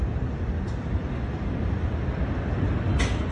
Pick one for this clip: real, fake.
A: real